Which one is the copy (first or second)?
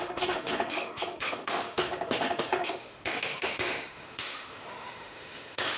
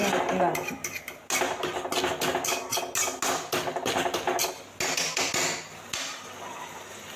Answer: first